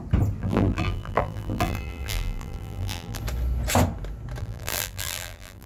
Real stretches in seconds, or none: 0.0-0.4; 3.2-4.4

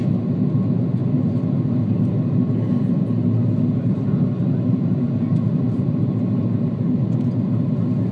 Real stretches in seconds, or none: 0.0-8.1

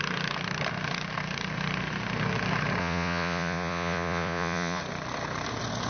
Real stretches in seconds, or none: 0.0-2.8; 4.8-5.9

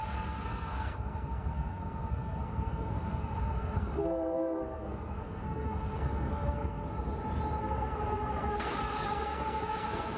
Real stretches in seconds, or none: 6.8-7.6